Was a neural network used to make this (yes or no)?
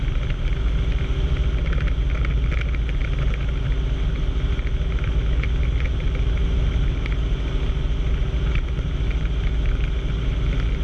no